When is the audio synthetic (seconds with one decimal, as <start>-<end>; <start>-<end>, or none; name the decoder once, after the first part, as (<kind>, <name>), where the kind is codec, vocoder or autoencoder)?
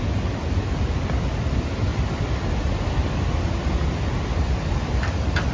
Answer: none